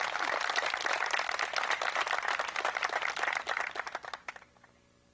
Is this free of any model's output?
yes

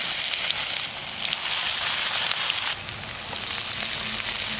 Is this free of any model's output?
yes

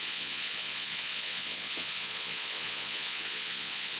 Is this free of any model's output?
no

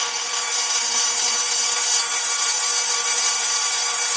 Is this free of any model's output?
no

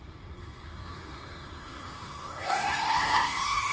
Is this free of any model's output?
no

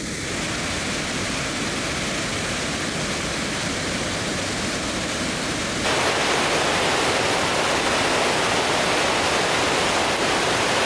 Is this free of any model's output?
yes